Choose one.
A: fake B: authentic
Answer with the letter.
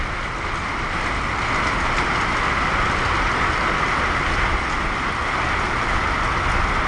B